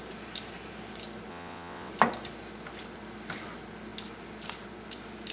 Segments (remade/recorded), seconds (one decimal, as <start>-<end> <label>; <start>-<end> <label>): 0.0-1.3 recorded; 1.3-1.9 remade; 1.9-5.3 recorded